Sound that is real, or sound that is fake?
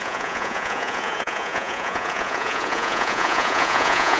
fake